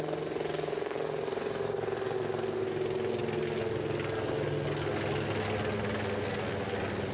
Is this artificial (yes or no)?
no